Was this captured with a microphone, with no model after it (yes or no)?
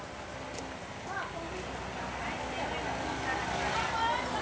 yes